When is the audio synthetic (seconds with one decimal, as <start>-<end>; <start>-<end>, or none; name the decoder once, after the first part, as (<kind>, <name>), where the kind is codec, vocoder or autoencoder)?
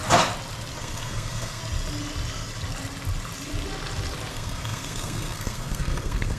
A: 0.8-1.6 (codec, SNAC); 4.3-6.4